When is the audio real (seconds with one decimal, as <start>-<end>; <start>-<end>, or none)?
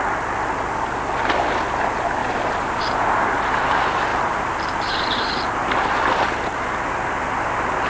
0.0-2.2; 3.3-4.1; 5.3-7.9